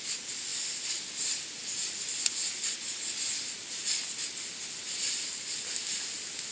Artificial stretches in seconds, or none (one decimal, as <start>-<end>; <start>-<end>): none

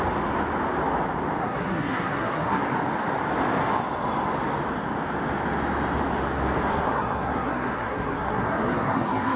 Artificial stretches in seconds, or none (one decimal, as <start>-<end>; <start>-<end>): 1.4-2.6; 6.7-9.4

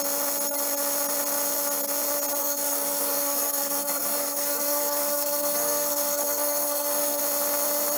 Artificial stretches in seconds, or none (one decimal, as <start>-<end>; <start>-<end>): 2.4-7.2

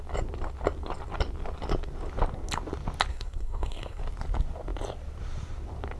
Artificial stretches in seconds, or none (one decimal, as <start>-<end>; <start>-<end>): 3.1-4.0

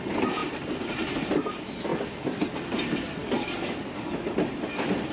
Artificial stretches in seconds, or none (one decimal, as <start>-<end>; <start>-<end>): 3.2-3.8

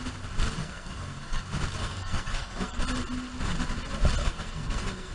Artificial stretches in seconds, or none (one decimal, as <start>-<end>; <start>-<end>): 0.6-1.4; 1.8-2.8; 4.2-5.1